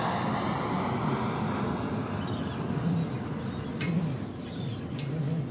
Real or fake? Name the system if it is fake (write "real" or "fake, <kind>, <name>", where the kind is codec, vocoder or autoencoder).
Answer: real